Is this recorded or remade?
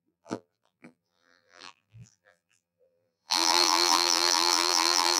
remade